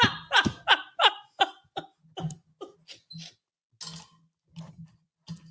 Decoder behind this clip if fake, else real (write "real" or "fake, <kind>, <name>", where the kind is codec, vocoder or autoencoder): real